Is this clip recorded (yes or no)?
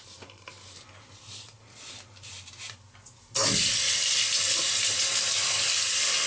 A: yes